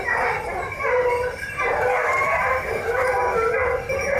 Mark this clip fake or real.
real